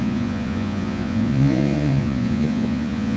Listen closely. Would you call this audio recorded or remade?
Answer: remade